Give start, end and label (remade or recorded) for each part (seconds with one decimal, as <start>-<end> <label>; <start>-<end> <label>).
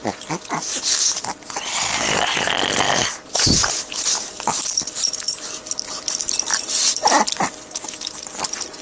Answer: 0.0-0.7 recorded; 0.7-2.5 remade; 2.5-3.0 recorded; 3.0-7.4 remade; 7.4-8.8 recorded